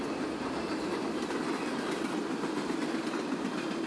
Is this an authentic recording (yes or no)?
yes